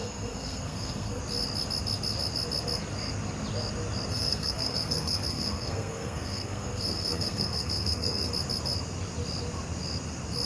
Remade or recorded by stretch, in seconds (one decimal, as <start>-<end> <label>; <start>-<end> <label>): 0.0-1.2 remade; 1.2-4.1 recorded; 4.1-8.3 remade; 8.3-10.5 recorded